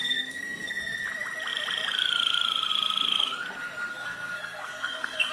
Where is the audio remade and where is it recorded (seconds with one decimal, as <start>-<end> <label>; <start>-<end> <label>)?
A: 0.0-0.8 remade; 0.8-3.9 recorded; 3.9-5.3 remade